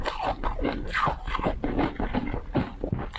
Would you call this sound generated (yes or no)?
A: no